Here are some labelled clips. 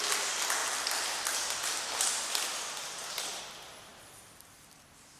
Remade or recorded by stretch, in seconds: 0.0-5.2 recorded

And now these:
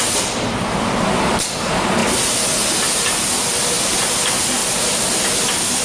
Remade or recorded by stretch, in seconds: 0.0-4.6 recorded; 4.6-5.1 remade; 5.1-5.8 recorded

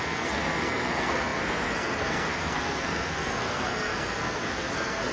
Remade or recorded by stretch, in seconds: 0.0-5.1 remade